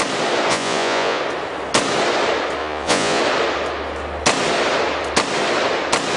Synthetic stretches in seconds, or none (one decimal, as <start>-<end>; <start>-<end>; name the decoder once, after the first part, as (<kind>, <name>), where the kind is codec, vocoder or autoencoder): 0.5-1.2 (vocoder, Vocos); 2.6-3.2